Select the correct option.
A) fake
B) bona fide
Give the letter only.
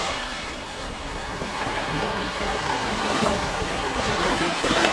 A